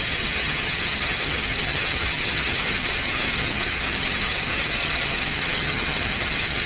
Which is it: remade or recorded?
remade